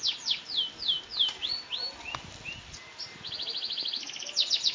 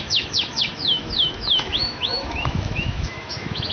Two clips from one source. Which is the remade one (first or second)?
second